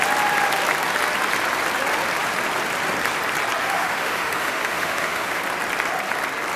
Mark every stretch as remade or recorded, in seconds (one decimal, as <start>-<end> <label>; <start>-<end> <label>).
0.0-3.6 recorded; 3.6-5.4 remade; 5.4-6.6 recorded